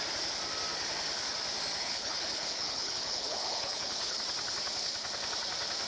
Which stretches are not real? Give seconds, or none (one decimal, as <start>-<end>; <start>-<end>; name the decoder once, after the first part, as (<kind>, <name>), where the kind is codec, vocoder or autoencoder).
1.8-4.2 (codec, HILCodec)